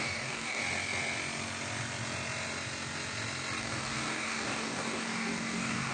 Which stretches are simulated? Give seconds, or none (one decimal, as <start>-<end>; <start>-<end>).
0.0-0.6; 3.6-5.9

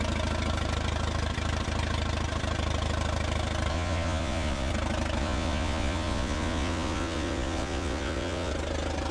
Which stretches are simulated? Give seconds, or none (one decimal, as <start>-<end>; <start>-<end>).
3.7-4.7; 5.2-8.5

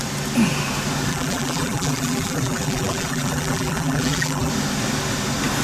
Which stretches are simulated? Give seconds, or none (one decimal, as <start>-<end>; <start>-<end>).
1.1-4.5

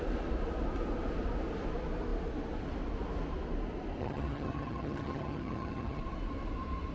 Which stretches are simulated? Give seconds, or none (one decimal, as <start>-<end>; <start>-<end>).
4.0-6.0

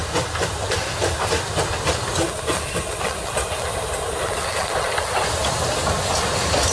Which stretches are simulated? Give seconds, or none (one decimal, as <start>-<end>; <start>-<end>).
0.0-1.4

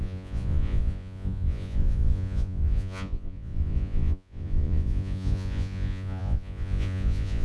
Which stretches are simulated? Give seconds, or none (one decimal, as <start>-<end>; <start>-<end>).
0.0-7.4

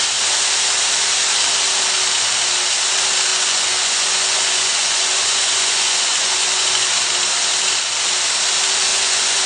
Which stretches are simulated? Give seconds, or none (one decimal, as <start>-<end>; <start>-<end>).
3.3-6.9; 8.9-9.5

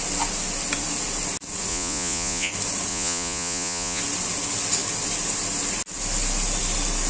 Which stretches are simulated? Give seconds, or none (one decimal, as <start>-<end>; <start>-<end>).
1.7-2.5; 2.9-4.0